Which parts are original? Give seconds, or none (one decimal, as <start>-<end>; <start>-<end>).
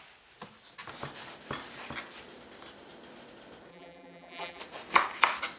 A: 0.0-3.7; 4.6-5.6